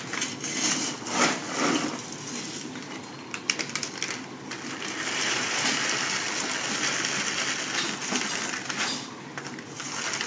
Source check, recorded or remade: recorded